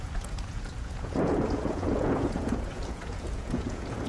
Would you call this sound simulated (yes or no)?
yes